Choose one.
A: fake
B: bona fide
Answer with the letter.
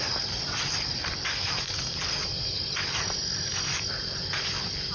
B